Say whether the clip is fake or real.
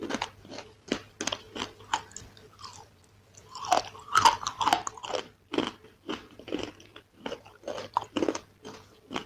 real